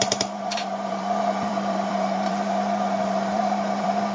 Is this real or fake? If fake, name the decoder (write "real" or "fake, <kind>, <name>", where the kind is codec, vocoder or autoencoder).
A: fake, vocoder, BigVGAN v2